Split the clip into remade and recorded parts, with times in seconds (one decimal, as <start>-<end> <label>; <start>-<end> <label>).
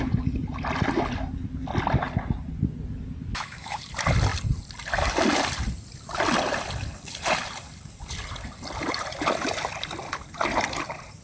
0.0-3.3 recorded; 3.3-3.8 remade; 3.8-11.2 recorded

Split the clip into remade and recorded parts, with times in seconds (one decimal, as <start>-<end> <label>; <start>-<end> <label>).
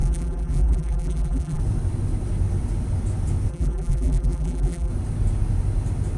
0.0-1.6 remade; 1.6-3.5 recorded; 3.5-4.9 remade; 4.9-6.2 recorded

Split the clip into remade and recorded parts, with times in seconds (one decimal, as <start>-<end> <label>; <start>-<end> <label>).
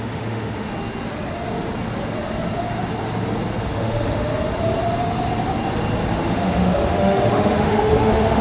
0.0-0.7 remade; 0.7-3.6 recorded; 3.6-4.3 remade; 4.3-6.2 recorded; 6.2-8.4 remade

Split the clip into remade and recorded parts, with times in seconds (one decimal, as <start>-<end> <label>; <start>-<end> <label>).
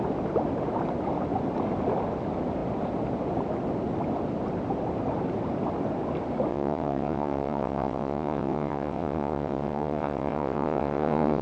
0.0-6.5 recorded; 6.5-11.4 remade